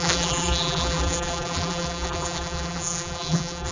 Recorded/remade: remade